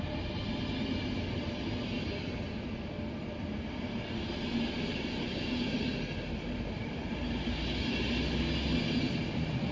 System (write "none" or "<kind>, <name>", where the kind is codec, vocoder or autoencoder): none